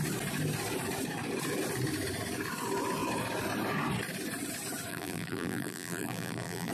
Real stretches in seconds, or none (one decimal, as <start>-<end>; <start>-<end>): 0.0-4.9